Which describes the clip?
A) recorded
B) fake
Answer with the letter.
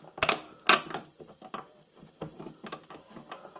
A